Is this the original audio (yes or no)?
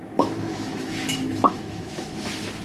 no